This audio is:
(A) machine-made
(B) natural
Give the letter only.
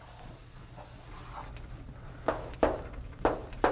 B